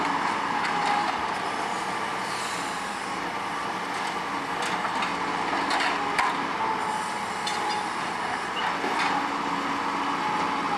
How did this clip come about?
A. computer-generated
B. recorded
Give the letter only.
B